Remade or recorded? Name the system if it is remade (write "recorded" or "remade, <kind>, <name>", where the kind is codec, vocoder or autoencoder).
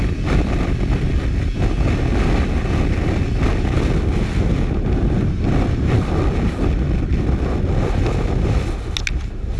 recorded